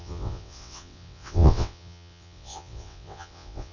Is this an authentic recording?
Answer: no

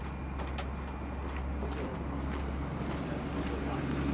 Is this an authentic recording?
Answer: yes